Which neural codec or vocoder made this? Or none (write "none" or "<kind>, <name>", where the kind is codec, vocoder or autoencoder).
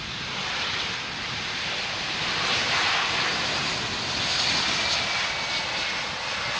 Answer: none